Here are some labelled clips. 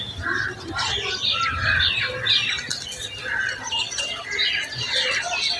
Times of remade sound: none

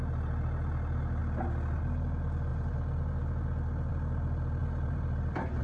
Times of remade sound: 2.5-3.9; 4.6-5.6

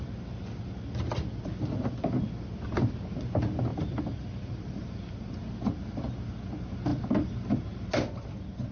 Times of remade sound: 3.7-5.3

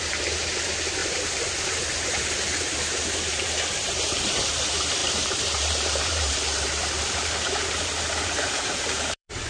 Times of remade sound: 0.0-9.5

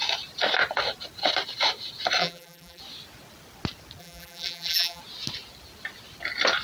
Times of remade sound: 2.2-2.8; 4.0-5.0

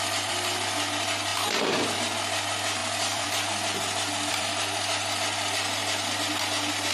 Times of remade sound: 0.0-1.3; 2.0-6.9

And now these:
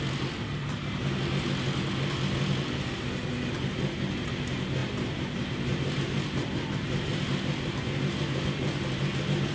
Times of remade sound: 4.8-8.0